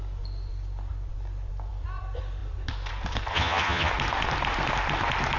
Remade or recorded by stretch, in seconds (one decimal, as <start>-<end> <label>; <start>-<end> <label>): 0.0-3.3 recorded; 3.3-3.9 remade; 3.9-5.4 recorded